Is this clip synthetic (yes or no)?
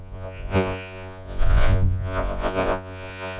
yes